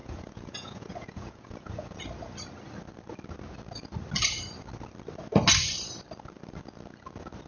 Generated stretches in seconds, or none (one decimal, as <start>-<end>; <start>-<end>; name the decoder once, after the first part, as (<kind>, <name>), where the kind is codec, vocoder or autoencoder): 0.0-2.0 (vocoder, Vocos)